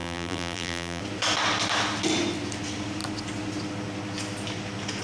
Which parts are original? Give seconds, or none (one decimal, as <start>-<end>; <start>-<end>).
1.0-5.0